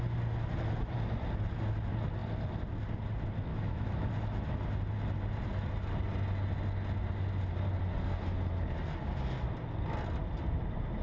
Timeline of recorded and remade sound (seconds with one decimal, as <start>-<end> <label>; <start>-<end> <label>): 0.0-3.5 recorded; 3.5-4.1 remade; 4.1-11.0 recorded